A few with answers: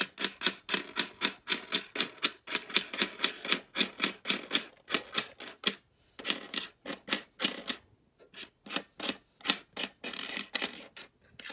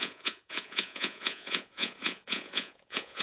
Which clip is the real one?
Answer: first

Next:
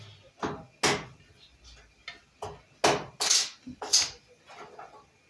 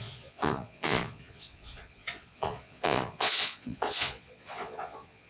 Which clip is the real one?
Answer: first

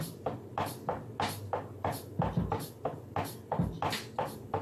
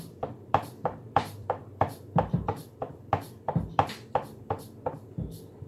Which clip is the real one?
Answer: first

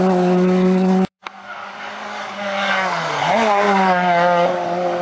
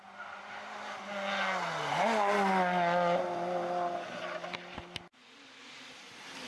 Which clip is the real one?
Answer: second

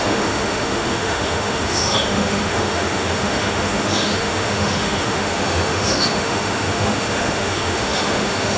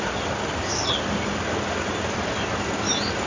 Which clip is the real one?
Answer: second